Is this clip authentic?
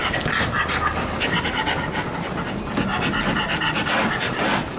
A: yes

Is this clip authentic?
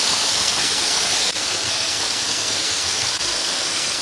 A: no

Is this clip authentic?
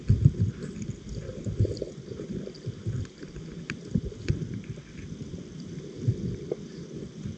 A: yes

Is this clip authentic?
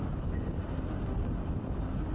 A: yes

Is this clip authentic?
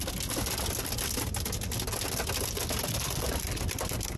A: yes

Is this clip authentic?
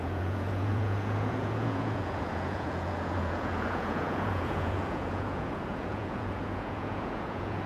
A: no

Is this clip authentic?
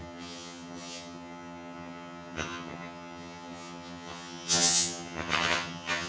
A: no